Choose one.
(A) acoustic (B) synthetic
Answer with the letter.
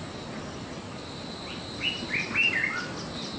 A